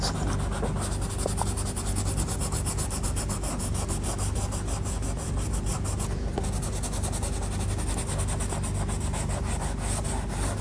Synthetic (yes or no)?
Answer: no